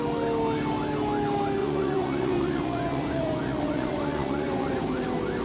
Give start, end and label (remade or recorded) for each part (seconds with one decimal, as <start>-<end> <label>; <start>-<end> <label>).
0.0-1.6 recorded; 1.6-4.8 remade; 4.8-5.4 recorded